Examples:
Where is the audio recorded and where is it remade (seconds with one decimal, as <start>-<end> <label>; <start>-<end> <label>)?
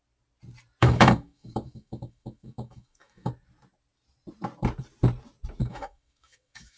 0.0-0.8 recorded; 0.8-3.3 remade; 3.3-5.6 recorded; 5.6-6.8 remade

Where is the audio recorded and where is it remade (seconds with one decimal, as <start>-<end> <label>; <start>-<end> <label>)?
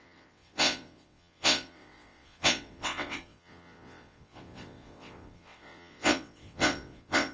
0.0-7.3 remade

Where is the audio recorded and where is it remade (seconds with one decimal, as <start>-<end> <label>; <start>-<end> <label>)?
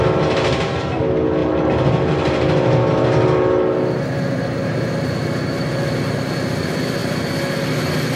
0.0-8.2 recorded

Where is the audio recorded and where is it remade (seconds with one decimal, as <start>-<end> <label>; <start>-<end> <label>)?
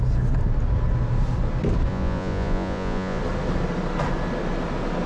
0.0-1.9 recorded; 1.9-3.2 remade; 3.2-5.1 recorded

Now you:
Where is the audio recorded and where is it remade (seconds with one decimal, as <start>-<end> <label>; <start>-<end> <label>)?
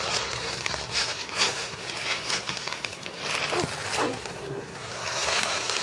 0.0-3.2 remade; 3.2-4.0 recorded; 4.0-5.8 remade